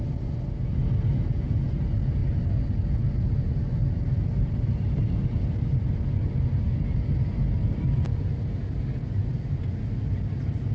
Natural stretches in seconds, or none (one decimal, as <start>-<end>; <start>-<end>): 0.0-3.8; 8.2-10.7